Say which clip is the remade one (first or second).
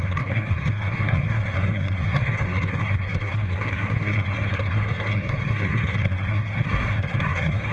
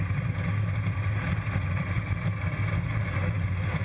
first